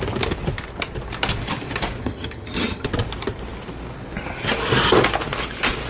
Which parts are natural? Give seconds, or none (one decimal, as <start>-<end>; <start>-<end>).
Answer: 0.0-2.0; 2.9-5.9